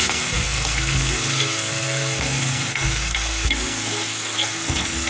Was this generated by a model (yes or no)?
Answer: yes